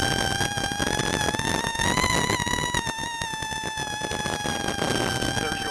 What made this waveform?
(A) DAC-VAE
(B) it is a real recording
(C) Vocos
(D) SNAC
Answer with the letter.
B